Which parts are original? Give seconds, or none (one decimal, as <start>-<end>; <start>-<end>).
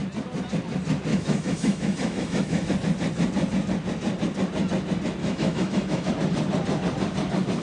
0.0-1.1; 2.7-5.2; 6.1-7.6